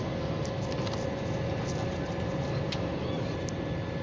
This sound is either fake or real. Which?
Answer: real